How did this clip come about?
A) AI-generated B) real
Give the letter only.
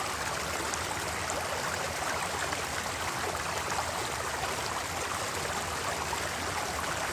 B